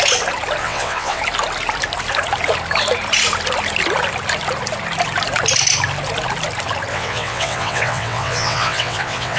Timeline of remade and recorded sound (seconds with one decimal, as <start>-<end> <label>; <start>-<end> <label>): 0.0-0.6 recorded; 0.6-1.2 remade; 1.2-6.9 recorded; 6.9-9.4 remade